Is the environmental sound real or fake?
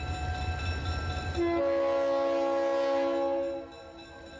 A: real